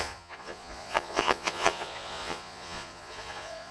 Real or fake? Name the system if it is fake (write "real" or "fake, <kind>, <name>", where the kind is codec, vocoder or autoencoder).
fake, vocoder, Vocos